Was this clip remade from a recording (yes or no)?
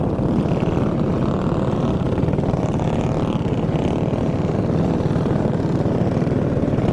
no